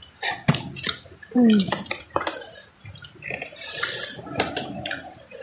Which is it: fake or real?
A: fake